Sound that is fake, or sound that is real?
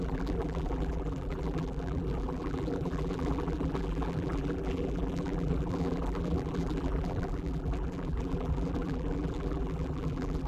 fake